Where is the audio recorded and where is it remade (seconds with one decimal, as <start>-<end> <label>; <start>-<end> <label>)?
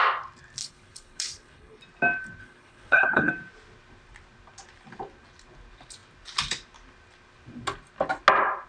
0.0-0.6 recorded; 0.6-1.8 remade; 1.8-2.4 recorded; 2.4-3.3 remade; 3.3-8.7 recorded